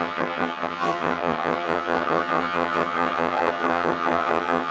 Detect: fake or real fake